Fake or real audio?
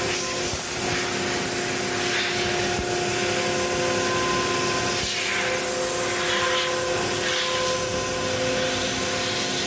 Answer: real